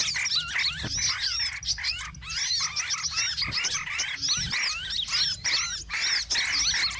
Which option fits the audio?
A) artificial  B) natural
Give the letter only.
B